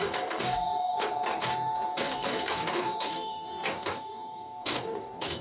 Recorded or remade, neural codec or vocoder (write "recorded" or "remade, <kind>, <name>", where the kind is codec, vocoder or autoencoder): remade, codec, DAC